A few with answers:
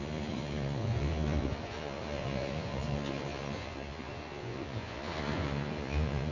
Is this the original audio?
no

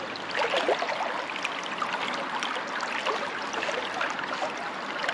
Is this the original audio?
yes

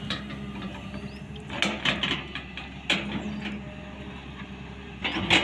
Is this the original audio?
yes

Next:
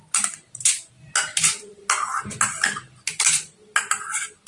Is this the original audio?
yes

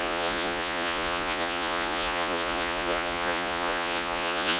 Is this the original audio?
no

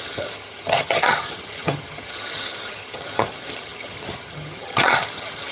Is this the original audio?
no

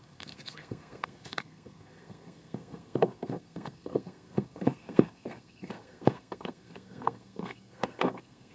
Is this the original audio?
no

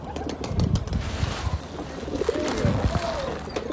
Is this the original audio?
yes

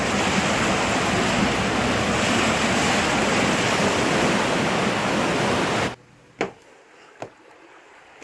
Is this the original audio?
yes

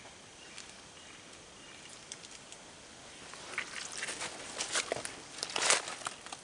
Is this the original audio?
yes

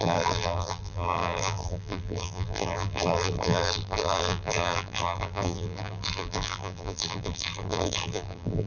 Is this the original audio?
no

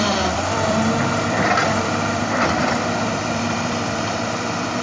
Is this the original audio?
no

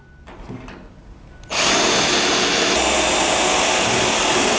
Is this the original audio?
yes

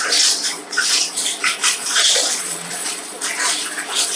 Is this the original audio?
no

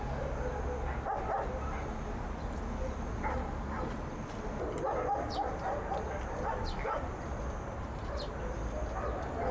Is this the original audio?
yes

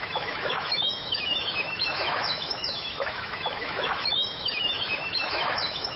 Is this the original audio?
no